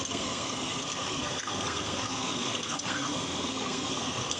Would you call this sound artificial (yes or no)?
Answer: yes